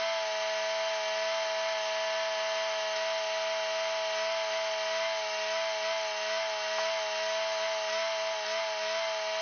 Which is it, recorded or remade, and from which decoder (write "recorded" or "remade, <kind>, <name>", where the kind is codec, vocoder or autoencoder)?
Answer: recorded